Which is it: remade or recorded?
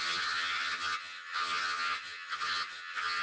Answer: remade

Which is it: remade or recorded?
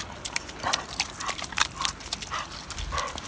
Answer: recorded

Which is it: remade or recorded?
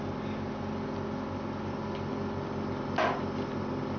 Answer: recorded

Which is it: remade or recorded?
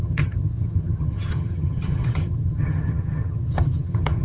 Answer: remade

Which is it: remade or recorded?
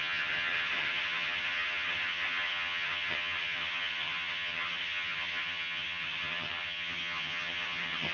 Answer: remade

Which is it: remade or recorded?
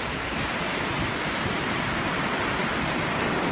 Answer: recorded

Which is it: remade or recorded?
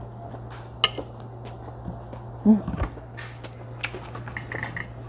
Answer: recorded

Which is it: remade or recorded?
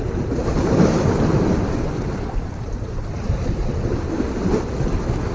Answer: recorded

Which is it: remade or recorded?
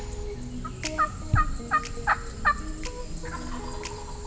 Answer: recorded